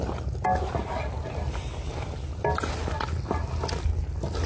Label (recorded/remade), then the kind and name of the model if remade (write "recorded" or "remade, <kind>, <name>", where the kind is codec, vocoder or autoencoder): recorded